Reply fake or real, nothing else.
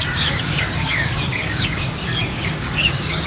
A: fake